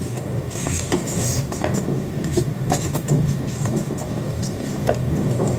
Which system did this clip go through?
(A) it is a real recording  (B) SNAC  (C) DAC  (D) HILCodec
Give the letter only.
C